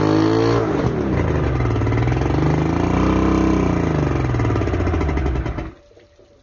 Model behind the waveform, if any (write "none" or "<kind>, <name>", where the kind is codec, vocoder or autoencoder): none